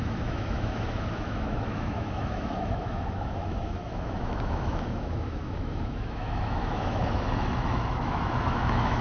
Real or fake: fake